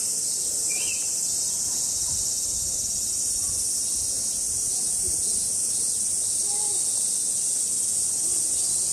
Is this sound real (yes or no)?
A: yes